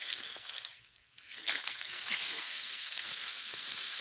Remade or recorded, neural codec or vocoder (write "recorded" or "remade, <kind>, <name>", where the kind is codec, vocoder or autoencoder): remade, codec, SNAC